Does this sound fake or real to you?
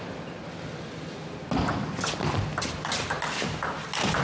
real